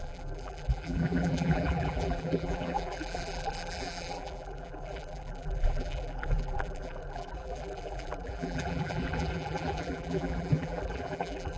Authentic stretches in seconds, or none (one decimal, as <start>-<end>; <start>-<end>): none